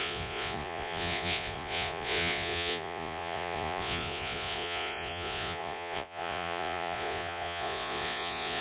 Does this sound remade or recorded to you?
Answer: remade